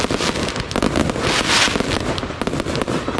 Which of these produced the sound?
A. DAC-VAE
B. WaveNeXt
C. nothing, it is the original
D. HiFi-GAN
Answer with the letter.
C